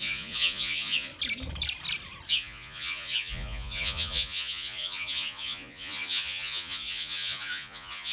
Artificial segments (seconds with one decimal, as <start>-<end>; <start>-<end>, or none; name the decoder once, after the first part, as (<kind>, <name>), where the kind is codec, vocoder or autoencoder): 0.0-1.1 (vocoder, Vocos); 2.3-8.1